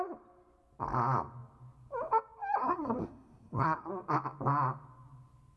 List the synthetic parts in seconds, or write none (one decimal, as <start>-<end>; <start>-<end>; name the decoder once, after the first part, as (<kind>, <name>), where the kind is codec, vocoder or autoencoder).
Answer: 2.6-3.9 (codec, SNAC)